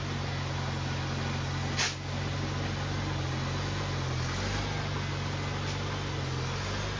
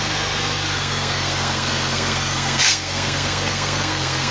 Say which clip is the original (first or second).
first